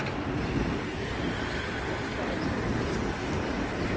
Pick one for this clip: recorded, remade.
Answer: recorded